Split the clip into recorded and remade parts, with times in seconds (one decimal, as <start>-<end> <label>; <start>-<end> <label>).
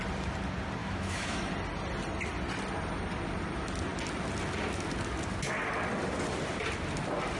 0.0-0.8 recorded; 0.8-1.5 remade; 1.5-7.4 recorded